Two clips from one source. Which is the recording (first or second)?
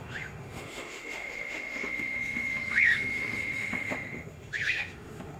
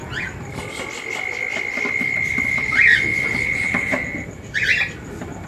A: second